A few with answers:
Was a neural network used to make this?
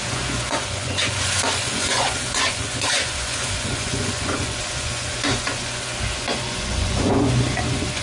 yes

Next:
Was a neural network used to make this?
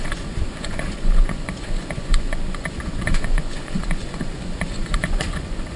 yes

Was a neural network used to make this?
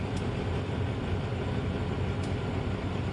no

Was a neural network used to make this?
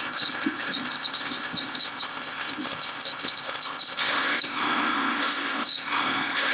yes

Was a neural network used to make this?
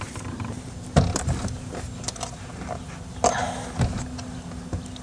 no